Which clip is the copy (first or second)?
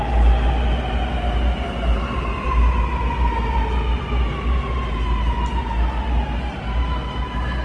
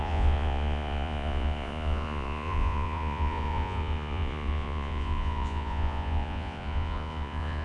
second